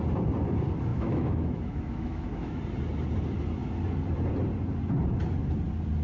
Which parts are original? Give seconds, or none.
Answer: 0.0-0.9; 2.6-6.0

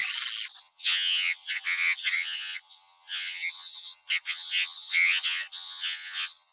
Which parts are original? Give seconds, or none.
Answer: 0.0-0.6